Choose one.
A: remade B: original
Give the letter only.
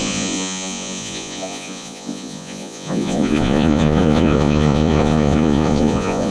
A